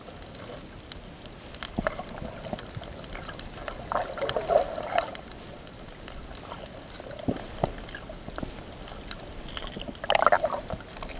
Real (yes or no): yes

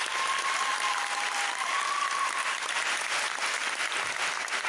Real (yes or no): yes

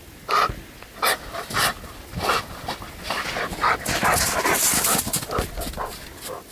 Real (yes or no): yes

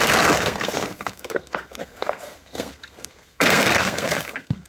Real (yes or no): no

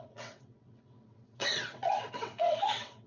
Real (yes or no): no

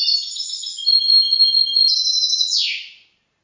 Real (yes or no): yes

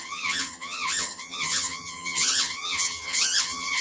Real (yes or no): no